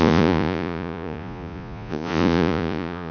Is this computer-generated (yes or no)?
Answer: yes